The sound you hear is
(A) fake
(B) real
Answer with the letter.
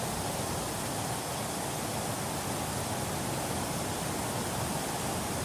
B